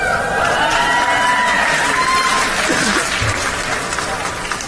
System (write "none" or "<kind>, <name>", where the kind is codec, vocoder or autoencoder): none